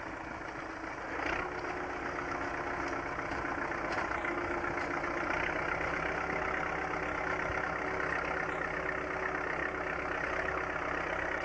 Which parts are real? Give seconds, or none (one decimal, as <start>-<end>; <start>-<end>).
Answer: 0.0-11.4